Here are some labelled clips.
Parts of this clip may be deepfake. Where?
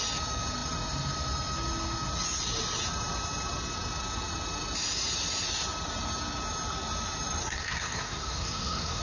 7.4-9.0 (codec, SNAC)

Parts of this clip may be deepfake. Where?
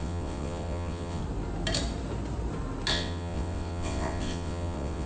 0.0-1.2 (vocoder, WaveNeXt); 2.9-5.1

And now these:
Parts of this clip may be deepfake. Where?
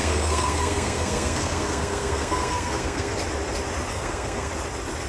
0.0-3.1 (codec, SNAC); 3.9-4.5